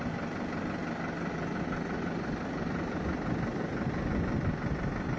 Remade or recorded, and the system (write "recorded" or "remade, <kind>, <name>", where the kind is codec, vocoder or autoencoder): recorded